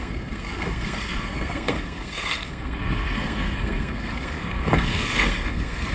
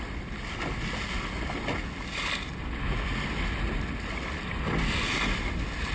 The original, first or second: second